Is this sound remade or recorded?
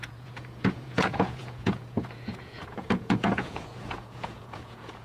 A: remade